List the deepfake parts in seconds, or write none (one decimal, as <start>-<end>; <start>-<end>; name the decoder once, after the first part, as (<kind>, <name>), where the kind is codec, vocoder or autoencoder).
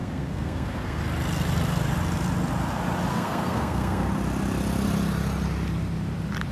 0.0-1.0 (codec, SNAC); 3.1-4.1